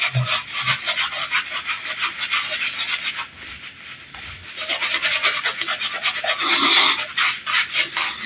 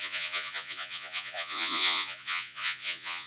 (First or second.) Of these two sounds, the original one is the first